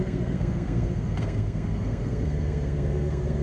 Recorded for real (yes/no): no